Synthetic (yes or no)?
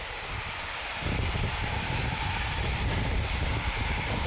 yes